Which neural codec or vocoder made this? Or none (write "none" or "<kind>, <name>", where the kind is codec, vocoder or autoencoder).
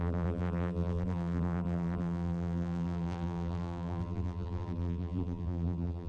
vocoder, BigVGAN v2